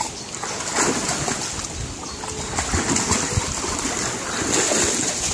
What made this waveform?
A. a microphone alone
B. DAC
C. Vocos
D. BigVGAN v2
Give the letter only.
A